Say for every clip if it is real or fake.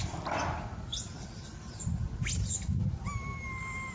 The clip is real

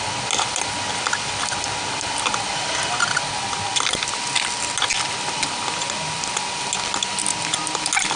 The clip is real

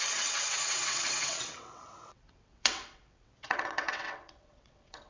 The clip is fake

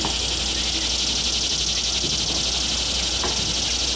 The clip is real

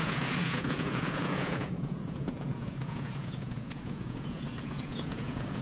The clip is fake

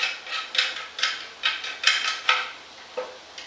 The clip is real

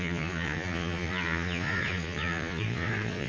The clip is fake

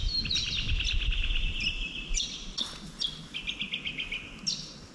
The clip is real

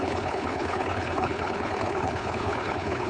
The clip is fake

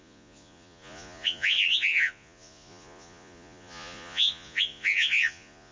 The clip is fake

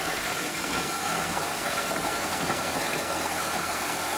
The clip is fake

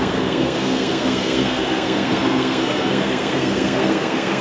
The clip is fake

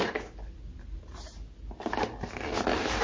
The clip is real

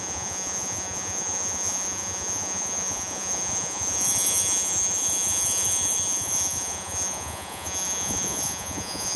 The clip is fake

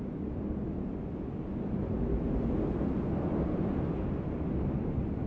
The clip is real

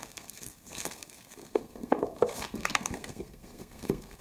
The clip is fake